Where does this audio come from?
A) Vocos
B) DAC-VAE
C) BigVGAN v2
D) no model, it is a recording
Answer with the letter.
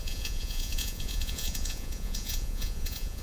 A